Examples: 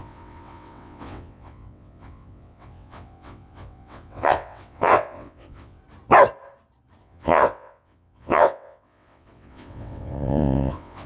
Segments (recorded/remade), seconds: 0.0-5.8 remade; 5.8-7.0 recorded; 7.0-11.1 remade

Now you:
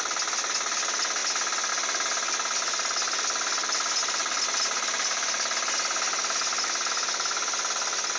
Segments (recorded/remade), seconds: 0.0-8.2 recorded

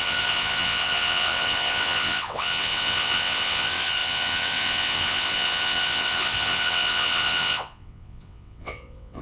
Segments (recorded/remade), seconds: 0.0-9.2 remade

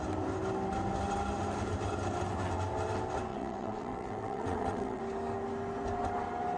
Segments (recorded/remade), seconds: 0.0-3.3 recorded; 3.3-5.0 remade; 5.0-6.6 recorded